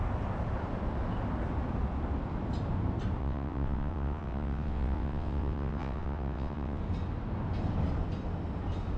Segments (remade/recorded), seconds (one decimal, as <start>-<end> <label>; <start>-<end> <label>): 0.0-3.2 recorded; 3.2-6.8 remade; 6.8-9.0 recorded